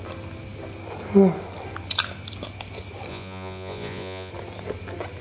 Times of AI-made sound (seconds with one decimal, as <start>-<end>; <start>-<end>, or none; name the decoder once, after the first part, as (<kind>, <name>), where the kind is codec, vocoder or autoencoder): 3.1-4.3 (vocoder, Vocos)